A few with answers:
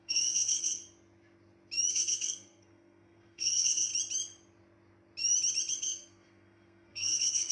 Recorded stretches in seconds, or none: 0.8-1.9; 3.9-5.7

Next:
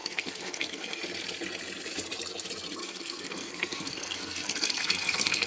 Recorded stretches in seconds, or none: 1.0-2.8

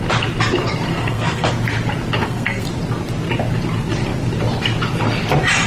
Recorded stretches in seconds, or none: 0.0-0.9; 1.5-2.2; 2.7-5.7

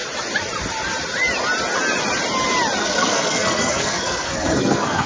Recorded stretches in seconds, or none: 0.0-2.8

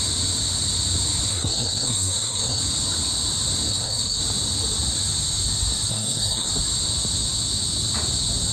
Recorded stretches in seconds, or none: 0.0-1.3; 2.6-3.7; 4.2-5.9; 6.5-8.5

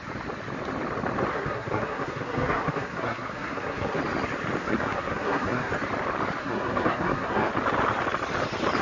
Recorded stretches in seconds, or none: 0.0-1.3; 4.0-4.6; 5.7-6.4; 7.5-8.8

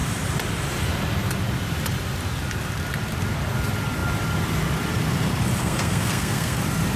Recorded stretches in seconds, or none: 0.0-5.6; 6.6-7.0